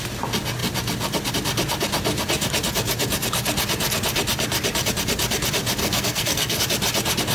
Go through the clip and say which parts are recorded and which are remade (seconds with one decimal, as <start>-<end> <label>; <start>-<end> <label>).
0.0-5.8 recorded; 5.8-6.6 remade; 6.6-7.3 recorded